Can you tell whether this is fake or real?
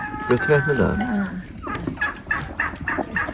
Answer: real